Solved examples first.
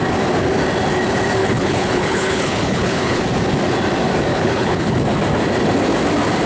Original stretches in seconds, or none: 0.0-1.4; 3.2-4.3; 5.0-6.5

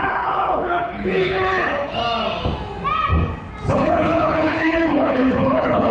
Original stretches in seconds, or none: 2.0-3.7

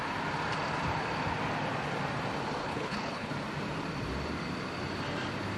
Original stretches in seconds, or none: 0.0-2.6; 3.3-5.6

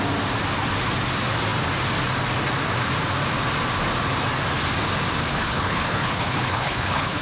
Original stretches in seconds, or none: 0.0-5.2